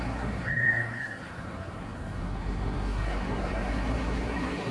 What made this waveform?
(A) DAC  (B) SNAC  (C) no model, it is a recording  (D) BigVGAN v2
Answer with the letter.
B